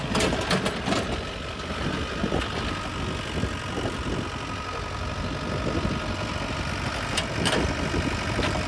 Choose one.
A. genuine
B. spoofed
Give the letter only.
A